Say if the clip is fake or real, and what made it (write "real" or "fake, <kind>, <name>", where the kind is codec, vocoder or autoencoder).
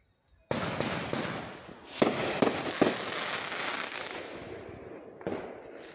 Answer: real